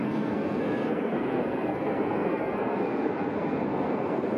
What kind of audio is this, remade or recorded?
remade